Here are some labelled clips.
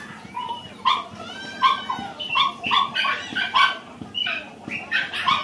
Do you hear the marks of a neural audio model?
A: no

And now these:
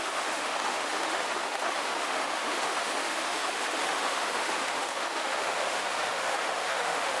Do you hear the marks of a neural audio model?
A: yes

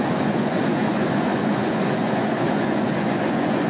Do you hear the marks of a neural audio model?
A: yes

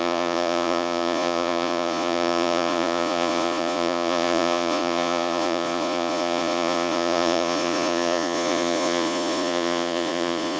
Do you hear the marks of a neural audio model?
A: yes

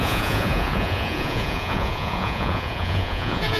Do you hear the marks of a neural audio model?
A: yes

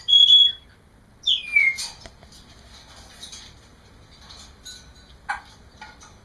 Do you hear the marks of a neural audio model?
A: no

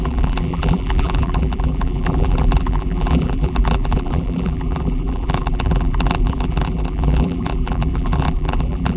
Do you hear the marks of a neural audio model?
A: yes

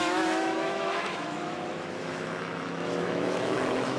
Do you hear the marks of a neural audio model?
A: yes